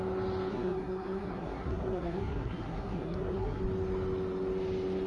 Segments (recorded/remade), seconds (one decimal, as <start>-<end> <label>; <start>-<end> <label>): 0.0-0.5 recorded; 0.5-3.6 remade; 3.6-5.1 recorded